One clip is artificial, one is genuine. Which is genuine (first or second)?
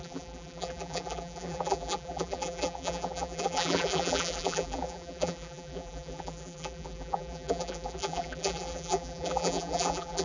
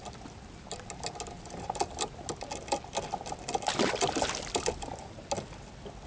second